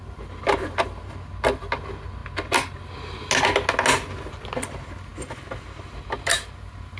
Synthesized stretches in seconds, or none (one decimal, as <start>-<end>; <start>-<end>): none